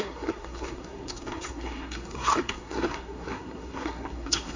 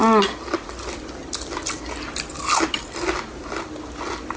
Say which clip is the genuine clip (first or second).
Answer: second